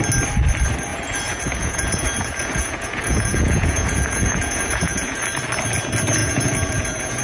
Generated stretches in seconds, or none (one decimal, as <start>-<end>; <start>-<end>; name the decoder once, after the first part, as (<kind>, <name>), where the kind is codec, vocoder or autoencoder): 0.9-5.2 (vocoder, Vocos); 6.2-7.2